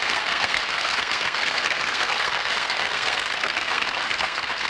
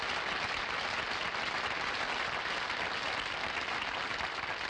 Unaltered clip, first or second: second